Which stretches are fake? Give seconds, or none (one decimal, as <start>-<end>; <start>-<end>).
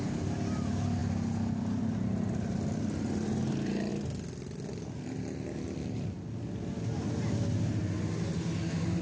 none